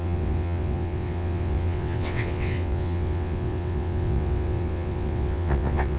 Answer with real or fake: fake